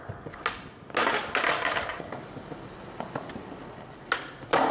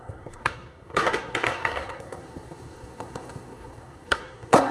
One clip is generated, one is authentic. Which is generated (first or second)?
second